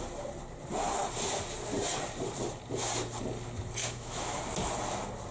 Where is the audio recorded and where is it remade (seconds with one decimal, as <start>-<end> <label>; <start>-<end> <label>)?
0.0-3.8 recorded; 3.8-4.4 remade; 4.4-5.3 recorded